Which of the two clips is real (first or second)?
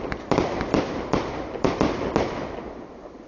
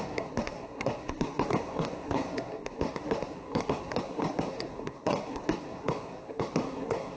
first